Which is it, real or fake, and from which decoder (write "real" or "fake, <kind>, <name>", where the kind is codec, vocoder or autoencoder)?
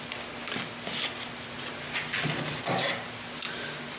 real